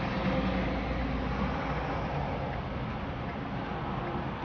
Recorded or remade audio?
recorded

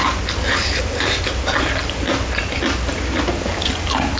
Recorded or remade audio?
recorded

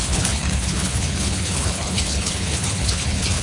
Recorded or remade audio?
remade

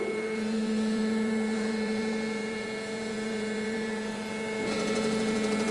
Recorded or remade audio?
remade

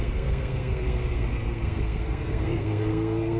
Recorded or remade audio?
remade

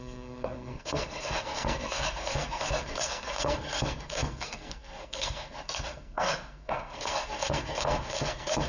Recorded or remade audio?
remade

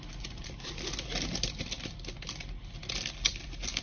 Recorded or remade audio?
recorded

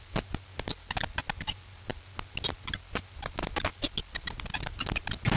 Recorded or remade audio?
recorded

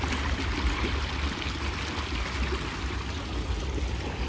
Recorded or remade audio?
recorded